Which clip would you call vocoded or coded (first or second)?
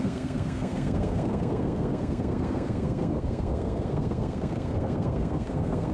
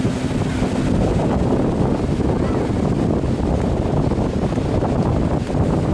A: first